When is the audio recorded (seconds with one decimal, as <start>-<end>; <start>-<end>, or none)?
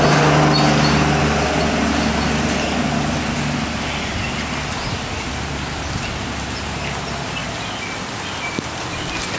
0.0-9.4